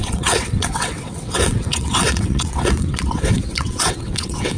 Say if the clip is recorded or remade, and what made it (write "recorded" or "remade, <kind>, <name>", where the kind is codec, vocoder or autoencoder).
remade, vocoder, WaveNeXt